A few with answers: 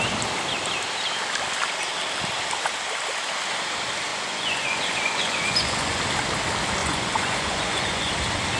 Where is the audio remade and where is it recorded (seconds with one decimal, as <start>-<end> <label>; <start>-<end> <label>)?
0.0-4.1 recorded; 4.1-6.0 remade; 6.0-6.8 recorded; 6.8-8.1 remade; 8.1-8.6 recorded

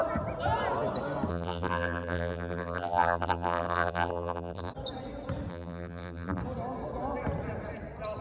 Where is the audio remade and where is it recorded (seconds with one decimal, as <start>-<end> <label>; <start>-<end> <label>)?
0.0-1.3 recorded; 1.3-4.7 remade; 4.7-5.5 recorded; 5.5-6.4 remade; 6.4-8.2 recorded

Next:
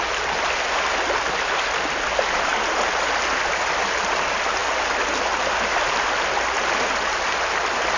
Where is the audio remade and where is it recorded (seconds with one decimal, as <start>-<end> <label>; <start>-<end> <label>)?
0.0-8.0 recorded

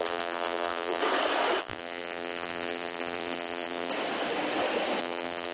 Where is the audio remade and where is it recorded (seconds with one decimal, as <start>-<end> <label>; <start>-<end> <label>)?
0.0-1.0 remade; 1.0-1.6 recorded; 1.6-3.9 remade; 3.9-5.0 recorded; 5.0-5.5 remade